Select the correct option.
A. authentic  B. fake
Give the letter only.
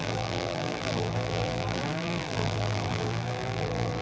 B